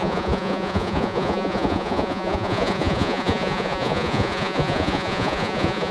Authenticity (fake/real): fake